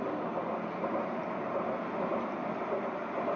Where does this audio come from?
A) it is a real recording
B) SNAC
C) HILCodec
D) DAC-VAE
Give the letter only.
A